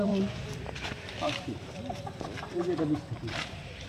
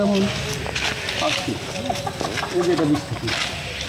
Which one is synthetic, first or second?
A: first